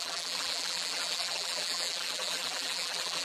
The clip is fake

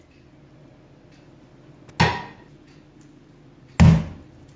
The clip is real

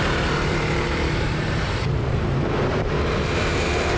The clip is fake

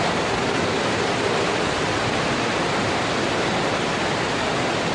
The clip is fake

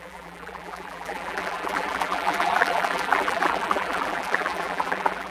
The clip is fake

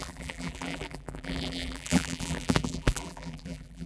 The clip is fake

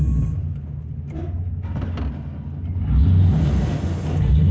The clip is real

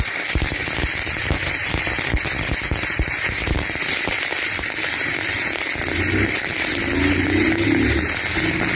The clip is real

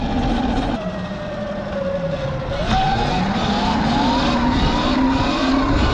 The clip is real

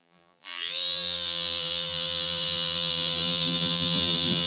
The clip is fake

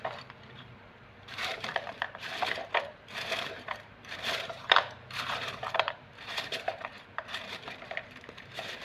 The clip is fake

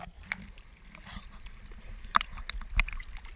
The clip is real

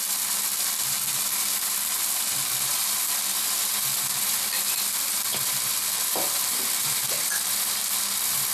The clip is fake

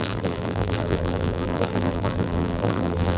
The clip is fake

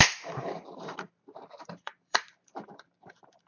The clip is fake